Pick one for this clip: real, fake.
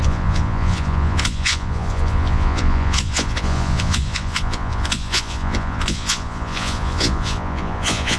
fake